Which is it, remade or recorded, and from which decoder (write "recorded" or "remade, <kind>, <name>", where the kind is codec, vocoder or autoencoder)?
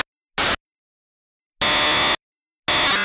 recorded